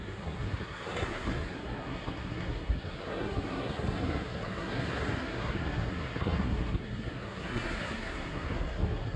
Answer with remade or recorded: remade